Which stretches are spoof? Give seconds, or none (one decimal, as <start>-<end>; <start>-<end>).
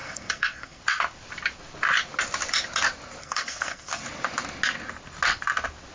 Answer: 0.0-0.8; 3.2-4.0